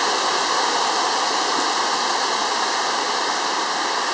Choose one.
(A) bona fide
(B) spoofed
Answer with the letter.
A